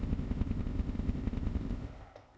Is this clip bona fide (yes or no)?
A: no